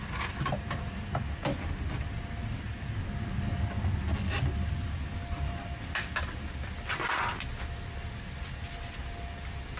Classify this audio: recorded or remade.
recorded